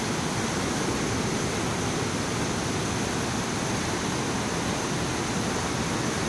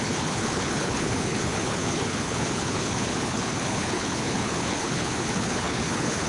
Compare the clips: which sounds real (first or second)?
first